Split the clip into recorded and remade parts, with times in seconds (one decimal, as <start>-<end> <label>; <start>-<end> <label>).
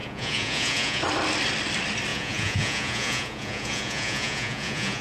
0.0-1.0 remade; 1.0-2.1 recorded; 2.1-5.0 remade